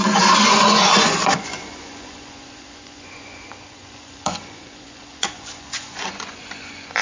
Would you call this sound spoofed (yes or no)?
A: yes